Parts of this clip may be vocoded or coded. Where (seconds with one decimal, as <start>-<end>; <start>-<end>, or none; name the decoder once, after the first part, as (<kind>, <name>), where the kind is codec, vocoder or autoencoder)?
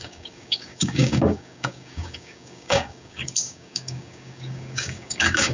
0.0-5.5 (codec, DAC)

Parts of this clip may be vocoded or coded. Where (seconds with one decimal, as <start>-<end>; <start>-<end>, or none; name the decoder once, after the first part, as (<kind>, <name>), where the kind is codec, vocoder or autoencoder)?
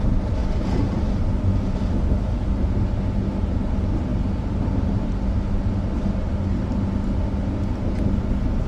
none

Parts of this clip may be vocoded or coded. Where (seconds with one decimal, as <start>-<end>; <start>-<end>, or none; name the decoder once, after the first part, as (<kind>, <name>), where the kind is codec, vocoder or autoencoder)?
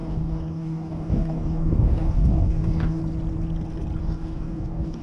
0.0-3.0 (codec, DAC); 4.0-5.0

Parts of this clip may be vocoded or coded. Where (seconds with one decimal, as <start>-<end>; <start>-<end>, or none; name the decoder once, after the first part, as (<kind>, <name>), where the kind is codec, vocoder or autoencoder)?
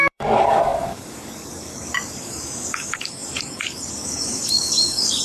0.0-5.2 (codec, DAC)